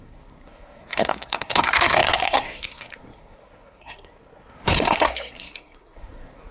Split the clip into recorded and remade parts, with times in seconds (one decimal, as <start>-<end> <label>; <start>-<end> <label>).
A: 0.0-6.5 remade